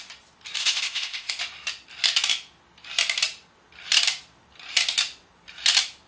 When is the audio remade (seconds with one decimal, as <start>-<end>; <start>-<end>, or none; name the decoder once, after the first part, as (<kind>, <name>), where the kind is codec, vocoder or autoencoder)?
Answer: 0.6-1.4 (codec, ZipCodec)

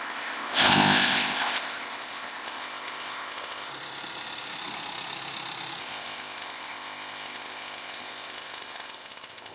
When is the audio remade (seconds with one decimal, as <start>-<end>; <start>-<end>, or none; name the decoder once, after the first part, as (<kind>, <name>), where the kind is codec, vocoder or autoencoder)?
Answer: 0.0-3.7 (codec, ZipCodec); 5.8-9.5

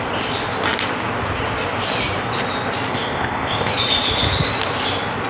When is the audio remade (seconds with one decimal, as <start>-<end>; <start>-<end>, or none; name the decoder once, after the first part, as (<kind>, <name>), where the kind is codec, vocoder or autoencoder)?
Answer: 2.9-3.7 (codec, ZipCodec)

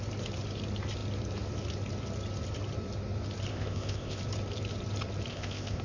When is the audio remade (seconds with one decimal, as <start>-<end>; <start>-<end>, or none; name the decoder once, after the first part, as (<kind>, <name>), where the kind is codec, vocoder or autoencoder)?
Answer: 3.5-4.2 (codec, ZipCodec); 5.3-5.8

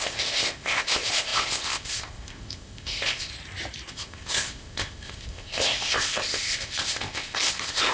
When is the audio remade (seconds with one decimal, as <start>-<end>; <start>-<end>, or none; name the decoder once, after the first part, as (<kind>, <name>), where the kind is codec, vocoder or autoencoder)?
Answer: 0.0-3.3 (codec, ZipCodec); 3.9-7.9

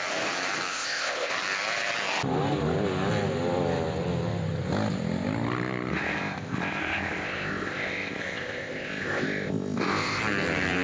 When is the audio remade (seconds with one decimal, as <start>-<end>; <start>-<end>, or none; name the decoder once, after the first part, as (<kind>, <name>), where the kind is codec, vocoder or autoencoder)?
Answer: 0.7-1.3 (codec, ZipCodec); 5.9-10.2

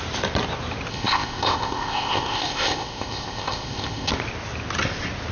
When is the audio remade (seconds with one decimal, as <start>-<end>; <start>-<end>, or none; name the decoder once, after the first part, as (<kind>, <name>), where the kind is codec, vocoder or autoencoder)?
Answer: 0.9-4.1 (codec, ZipCodec)

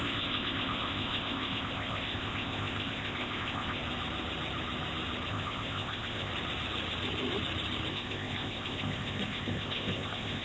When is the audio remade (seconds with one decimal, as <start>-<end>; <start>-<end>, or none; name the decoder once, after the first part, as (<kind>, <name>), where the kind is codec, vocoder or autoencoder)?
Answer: 0.0-3.8 (codec, ZipCodec); 5.3-6.3; 7.9-10.4